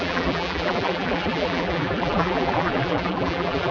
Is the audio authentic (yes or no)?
no